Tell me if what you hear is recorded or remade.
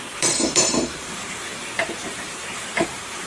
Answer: remade